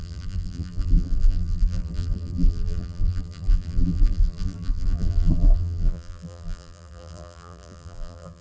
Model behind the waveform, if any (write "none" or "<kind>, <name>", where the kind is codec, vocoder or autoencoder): vocoder, BigVGAN v2